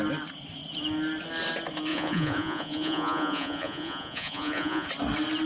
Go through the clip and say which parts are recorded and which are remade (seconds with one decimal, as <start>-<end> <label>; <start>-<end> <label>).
0.0-1.9 recorded; 1.9-4.9 remade; 4.9-5.5 recorded

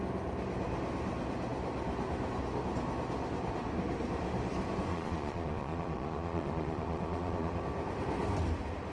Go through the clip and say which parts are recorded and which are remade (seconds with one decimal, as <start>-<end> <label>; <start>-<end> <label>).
0.0-4.9 recorded; 4.9-7.6 remade; 7.6-8.9 recorded

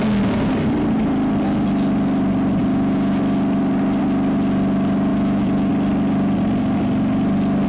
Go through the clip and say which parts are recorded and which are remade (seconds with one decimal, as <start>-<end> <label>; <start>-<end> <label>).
0.0-2.7 recorded; 2.7-3.2 remade; 3.2-5.1 recorded; 5.1-5.7 remade; 5.7-7.7 recorded

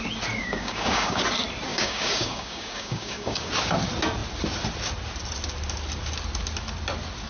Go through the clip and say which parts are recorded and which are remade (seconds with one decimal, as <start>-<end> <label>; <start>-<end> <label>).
0.0-0.4 recorded; 0.4-1.2 remade; 1.2-1.7 recorded; 1.7-3.5 remade; 3.5-7.3 recorded